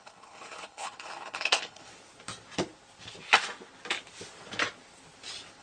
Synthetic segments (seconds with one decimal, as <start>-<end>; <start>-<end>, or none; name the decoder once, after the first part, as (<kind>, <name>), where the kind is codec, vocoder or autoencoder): 0.0-1.9 (codec, HILCodec)